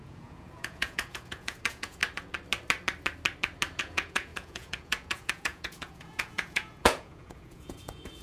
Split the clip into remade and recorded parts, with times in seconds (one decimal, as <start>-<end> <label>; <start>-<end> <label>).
0.0-2.0 remade; 2.0-3.8 recorded; 3.8-8.2 remade